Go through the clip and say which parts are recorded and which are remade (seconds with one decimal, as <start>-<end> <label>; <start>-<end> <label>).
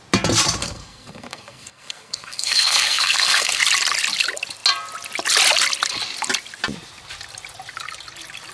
0.0-0.6 recorded; 0.6-3.6 remade; 3.6-8.5 recorded